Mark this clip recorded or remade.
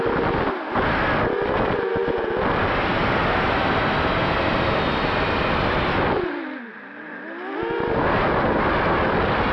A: recorded